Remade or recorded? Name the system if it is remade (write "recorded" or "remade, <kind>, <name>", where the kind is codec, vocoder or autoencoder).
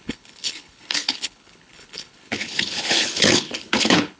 remade, codec, HILCodec